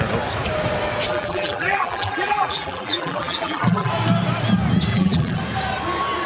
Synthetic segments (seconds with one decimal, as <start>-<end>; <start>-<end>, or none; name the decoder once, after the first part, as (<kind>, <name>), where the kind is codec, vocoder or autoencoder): 1.1-3.9 (vocoder, BigVGAN v2); 4.9-5.4